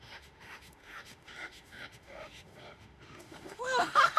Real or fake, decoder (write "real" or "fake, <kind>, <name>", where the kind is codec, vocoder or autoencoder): fake, autoencoder, DAC-VAE